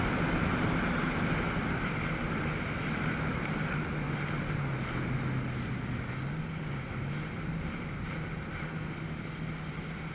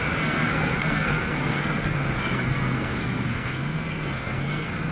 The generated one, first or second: second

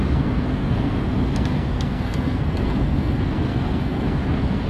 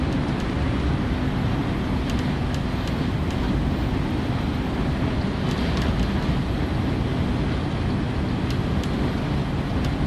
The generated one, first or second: first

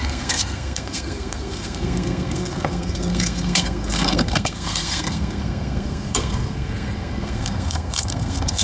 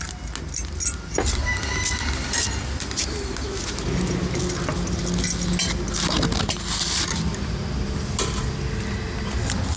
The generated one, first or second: first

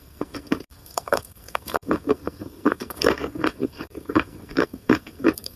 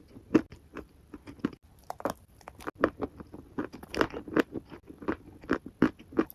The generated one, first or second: first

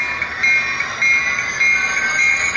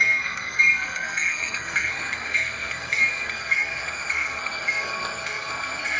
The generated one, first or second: second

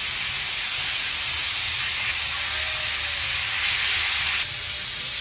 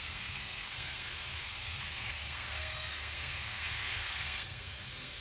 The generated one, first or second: second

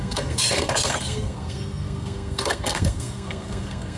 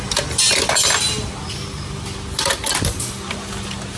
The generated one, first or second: first